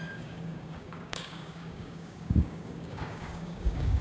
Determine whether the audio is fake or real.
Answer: fake